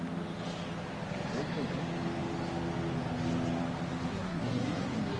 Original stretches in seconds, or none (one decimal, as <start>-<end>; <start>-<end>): 0.0-4.1